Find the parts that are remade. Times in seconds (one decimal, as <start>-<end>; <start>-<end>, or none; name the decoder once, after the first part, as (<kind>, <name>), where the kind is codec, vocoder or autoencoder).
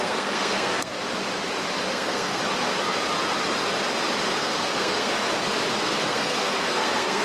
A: 0.0-1.0 (codec, SNAC); 1.9-2.4; 4.4-5.1; 5.7-7.2